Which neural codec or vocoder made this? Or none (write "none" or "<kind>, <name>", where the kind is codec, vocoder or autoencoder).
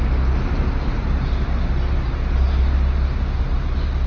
none